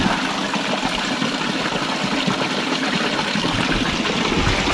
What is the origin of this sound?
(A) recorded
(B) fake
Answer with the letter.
A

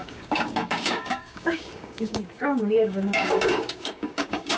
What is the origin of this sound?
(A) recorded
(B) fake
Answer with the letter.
B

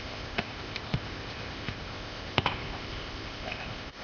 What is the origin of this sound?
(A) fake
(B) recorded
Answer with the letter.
A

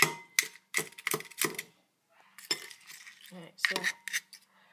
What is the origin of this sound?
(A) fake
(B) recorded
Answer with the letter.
B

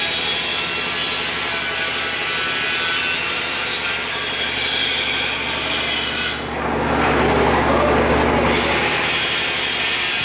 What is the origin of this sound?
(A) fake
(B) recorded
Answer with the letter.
B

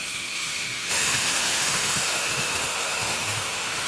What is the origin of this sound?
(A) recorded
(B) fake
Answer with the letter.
B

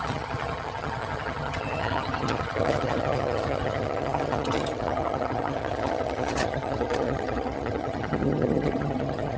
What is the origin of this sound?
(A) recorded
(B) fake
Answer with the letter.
B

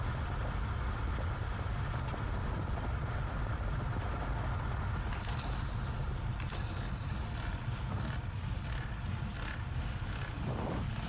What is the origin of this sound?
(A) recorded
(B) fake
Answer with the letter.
A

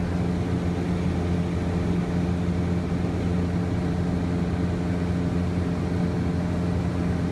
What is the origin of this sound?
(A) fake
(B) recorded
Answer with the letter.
B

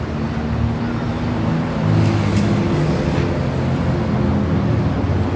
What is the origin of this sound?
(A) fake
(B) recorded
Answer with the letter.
B